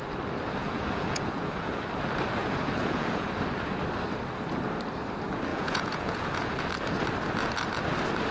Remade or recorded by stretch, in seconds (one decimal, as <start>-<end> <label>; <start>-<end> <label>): 0.0-0.6 recorded; 0.6-1.8 remade; 1.8-2.4 recorded; 2.4-3.3 remade; 3.3-5.5 recorded; 5.5-6.5 remade; 6.5-8.3 recorded